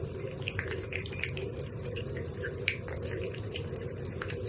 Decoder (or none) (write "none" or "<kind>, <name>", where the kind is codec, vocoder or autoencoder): vocoder, BigVGAN v2